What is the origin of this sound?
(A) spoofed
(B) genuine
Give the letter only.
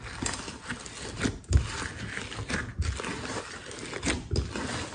B